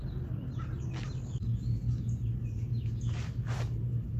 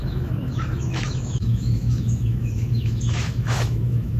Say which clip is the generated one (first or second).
second